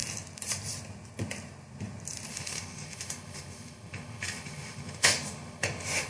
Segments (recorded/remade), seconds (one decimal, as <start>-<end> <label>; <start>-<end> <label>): 0.0-2.3 recorded; 2.3-6.1 remade